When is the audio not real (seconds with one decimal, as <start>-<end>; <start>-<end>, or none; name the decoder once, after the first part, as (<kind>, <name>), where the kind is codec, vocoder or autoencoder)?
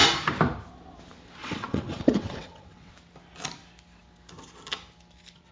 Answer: 1.4-2.9 (vocoder, WaveNeXt)